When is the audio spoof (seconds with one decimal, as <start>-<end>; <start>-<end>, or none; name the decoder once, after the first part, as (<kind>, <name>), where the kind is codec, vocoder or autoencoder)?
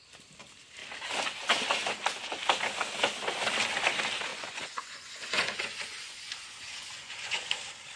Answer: 4.3-7.6 (vocoder, Vocos)